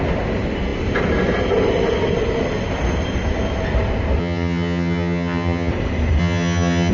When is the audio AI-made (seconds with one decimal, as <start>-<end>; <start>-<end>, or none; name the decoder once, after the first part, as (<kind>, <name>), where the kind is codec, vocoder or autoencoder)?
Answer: 4.2-5.7 (vocoder, HiFi-GAN); 6.2-6.9